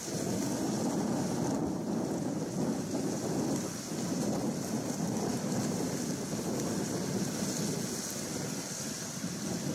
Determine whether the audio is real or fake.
real